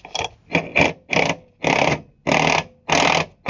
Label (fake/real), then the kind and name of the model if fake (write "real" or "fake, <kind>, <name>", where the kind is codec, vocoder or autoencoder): real